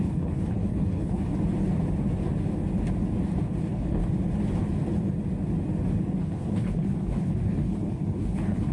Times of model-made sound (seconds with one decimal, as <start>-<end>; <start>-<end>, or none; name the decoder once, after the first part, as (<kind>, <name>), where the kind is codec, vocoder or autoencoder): 0.0-1.3 (codec, HILCodec); 3.6-4.0; 6.2-8.7